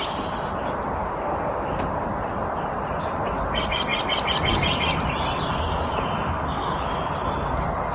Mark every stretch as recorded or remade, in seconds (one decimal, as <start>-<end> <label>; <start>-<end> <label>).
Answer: 0.0-6.6 recorded; 6.6-7.1 remade; 7.1-7.9 recorded